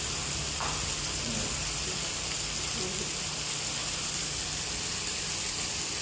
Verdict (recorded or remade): recorded